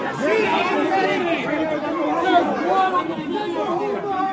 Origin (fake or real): real